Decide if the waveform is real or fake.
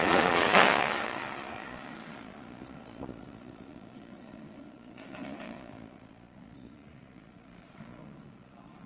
fake